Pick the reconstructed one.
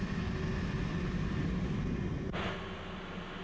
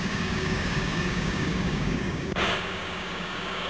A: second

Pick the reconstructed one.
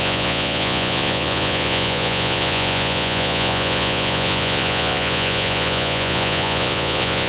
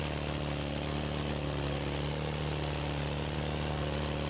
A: first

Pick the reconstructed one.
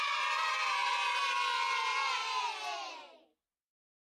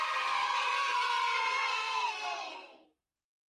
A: second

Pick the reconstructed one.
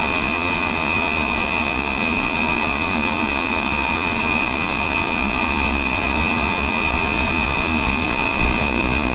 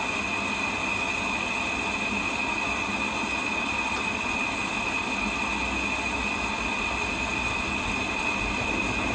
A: first